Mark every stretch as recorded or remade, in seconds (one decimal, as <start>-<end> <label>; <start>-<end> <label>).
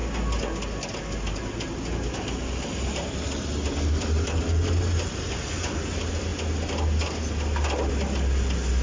0.0-8.8 recorded